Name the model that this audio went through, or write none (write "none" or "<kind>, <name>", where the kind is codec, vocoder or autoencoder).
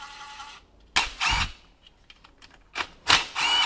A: none